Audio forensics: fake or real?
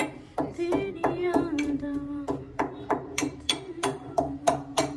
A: fake